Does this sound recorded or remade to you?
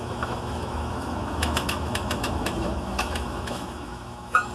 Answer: remade